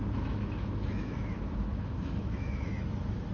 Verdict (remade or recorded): remade